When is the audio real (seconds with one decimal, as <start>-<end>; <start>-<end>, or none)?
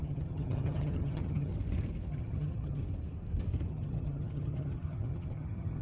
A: 1.5-2.1; 2.8-3.7